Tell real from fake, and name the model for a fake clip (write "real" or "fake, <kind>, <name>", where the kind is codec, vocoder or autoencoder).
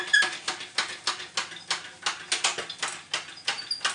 real